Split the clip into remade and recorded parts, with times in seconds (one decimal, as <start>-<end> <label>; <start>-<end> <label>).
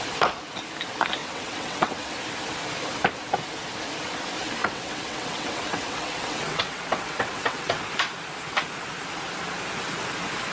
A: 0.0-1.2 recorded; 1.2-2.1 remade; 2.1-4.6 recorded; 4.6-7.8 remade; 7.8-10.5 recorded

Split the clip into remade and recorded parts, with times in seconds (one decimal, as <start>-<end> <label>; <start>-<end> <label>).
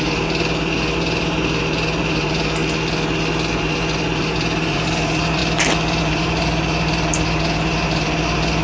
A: 0.0-2.6 remade; 2.6-3.5 recorded; 3.5-5.4 remade; 5.4-6.0 recorded; 6.0-8.6 remade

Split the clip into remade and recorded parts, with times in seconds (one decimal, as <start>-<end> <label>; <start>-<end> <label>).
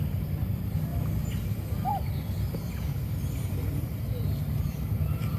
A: 0.0-5.4 recorded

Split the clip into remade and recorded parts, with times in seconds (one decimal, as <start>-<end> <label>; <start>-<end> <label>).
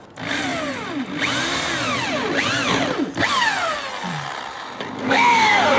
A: 0.0-5.0 recorded; 5.0-5.8 remade